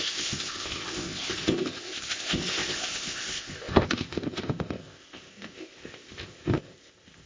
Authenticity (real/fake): fake